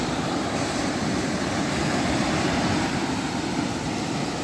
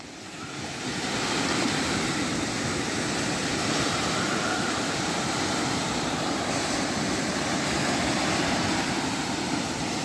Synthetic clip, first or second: second